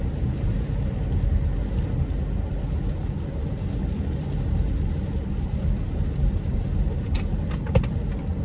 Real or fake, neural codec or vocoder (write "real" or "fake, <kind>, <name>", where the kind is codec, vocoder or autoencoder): real